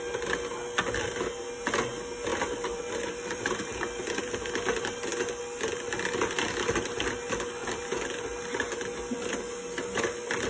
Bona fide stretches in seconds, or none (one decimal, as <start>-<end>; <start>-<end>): 0.0-2.3; 4.5-7.6; 8.4-10.5